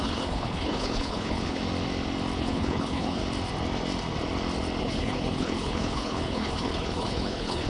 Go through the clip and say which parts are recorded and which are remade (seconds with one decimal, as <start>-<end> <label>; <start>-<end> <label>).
0.0-1.6 remade; 1.6-2.4 recorded; 2.4-3.2 remade; 3.2-4.8 recorded; 4.8-7.7 remade

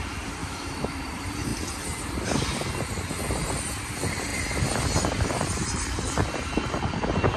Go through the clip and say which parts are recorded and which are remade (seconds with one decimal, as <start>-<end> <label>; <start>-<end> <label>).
0.0-0.4 recorded; 0.4-1.0 remade; 1.0-7.4 recorded

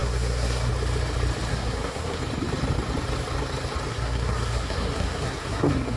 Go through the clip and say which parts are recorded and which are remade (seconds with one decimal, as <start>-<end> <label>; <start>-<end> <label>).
0.0-0.7 remade; 0.7-1.5 recorded; 1.5-2.2 remade; 2.2-3.9 recorded; 3.9-6.0 remade

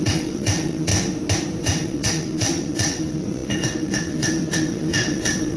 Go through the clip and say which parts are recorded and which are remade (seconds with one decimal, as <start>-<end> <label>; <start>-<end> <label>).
0.0-0.9 remade; 0.9-1.6 recorded; 1.6-5.6 remade